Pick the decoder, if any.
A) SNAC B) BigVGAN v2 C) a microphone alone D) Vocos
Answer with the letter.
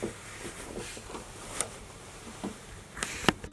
B